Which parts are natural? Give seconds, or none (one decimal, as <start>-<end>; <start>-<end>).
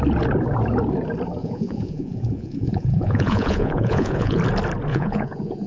0.0-1.4; 4.4-4.9